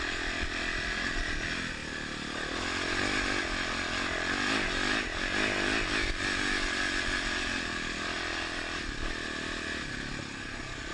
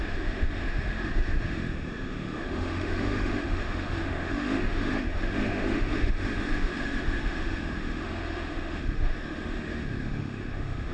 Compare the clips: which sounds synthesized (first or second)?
second